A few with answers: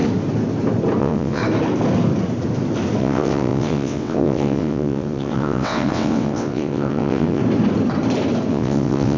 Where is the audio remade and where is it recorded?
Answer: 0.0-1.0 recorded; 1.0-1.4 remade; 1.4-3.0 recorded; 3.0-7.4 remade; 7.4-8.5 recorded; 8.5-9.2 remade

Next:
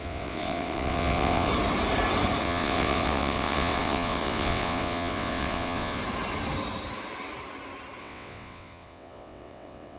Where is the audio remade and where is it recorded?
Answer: 0.0-1.5 remade; 1.5-2.4 recorded; 2.4-6.0 remade; 6.0-8.0 recorded; 8.0-10.0 remade

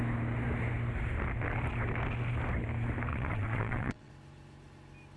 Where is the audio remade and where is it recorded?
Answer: 0.0-3.1 recorded; 3.1-4.1 remade; 4.1-5.2 recorded

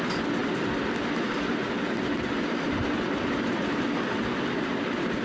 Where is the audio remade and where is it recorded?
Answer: 0.0-5.2 recorded

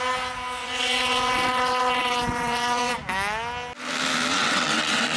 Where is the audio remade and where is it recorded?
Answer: 0.0-0.6 recorded; 0.6-2.9 remade; 2.9-4.3 recorded; 4.3-5.2 remade

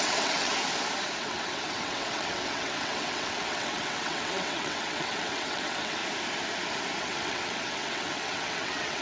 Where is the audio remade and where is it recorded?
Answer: 0.0-0.5 remade; 0.5-1.2 recorded; 1.2-6.0 remade; 6.0-7.0 recorded; 7.0-9.0 remade

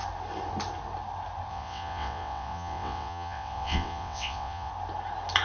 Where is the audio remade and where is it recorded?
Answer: 0.0-1.5 recorded; 1.5-4.7 remade; 4.7-5.4 recorded